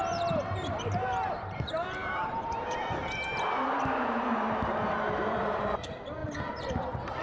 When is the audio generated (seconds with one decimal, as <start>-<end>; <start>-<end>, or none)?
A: 0.0-6.2; 6.7-7.2